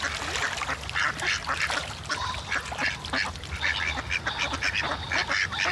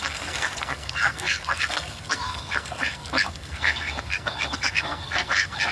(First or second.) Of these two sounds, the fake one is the second